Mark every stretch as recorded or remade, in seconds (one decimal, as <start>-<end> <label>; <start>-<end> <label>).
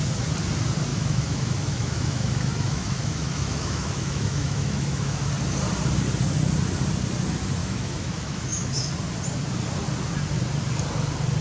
0.0-0.9 recorded; 0.9-5.3 remade; 5.3-7.6 recorded; 7.6-8.9 remade; 8.9-11.4 recorded